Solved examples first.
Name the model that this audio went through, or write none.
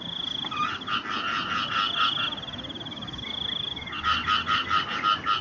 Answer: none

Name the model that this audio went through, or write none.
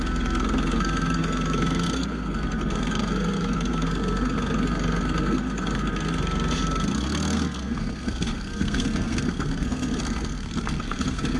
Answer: codec, SNAC